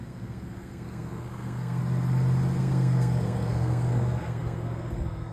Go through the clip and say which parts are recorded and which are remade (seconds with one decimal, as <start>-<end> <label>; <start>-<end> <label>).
0.0-1.8 remade; 1.8-2.6 recorded; 2.6-5.3 remade